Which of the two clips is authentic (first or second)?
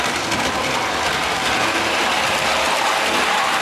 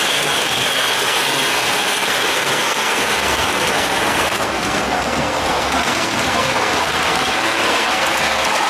first